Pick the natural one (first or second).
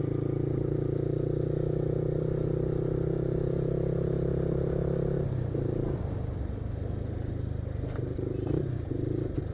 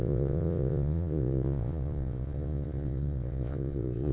first